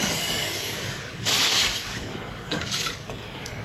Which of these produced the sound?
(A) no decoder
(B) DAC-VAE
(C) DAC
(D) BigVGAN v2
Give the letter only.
C